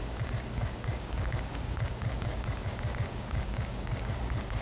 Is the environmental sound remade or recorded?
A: remade